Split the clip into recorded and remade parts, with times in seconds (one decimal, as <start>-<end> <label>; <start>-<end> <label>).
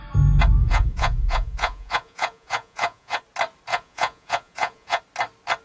0.0-0.6 recorded; 0.6-3.2 remade; 3.2-3.7 recorded; 3.7-5.0 remade; 5.0-5.6 recorded